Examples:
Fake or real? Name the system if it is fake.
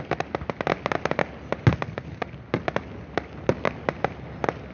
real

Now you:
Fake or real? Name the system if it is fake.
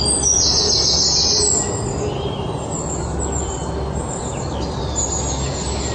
real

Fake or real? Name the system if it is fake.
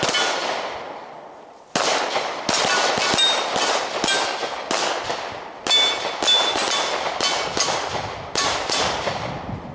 real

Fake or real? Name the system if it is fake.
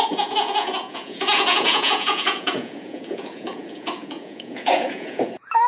fake, vocoder, Vocos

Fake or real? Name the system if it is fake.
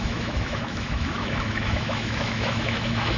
fake, autoencoder, DAC-VAE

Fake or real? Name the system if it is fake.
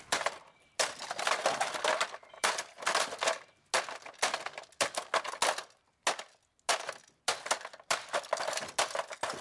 real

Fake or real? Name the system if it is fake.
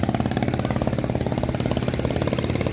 real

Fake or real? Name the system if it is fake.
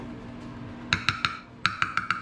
real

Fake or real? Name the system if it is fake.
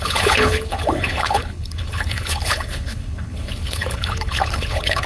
fake, codec, HILCodec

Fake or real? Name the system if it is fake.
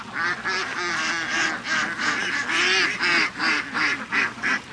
real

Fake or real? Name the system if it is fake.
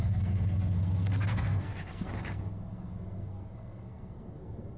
fake, codec, SNAC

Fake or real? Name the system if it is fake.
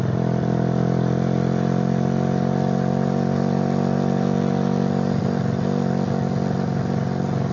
real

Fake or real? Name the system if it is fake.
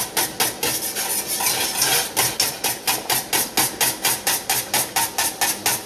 real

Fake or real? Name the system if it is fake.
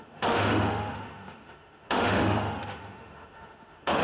fake, autoencoder, DAC-VAE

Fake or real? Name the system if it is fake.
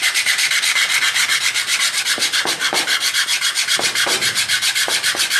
fake, vocoder, BigVGAN v2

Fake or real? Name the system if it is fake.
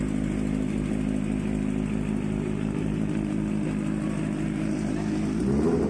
real